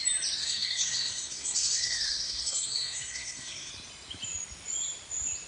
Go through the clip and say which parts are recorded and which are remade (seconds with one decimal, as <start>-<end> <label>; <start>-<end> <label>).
0.0-0.4 recorded; 0.4-3.7 remade; 3.7-5.5 recorded